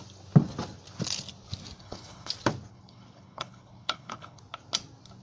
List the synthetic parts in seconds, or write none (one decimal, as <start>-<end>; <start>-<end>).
1.8-2.3; 2.7-4.4